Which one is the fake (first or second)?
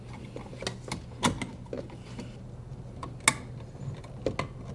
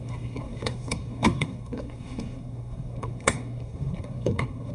second